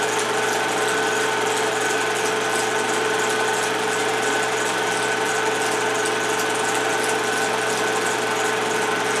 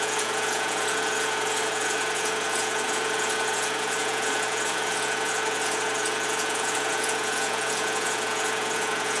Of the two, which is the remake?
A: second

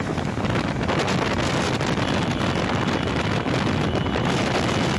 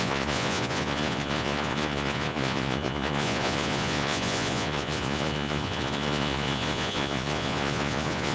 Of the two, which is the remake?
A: second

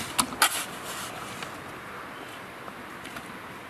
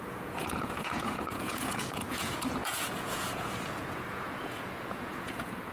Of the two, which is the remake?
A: second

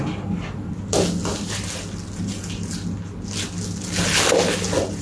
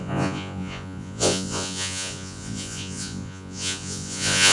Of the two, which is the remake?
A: second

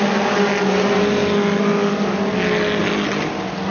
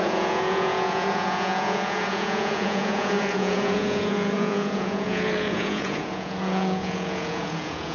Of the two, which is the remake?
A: second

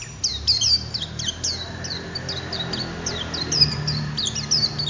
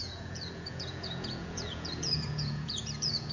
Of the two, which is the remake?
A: second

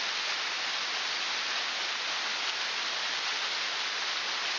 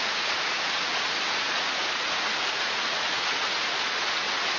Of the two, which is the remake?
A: second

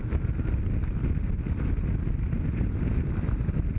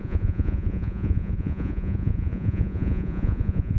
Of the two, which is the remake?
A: second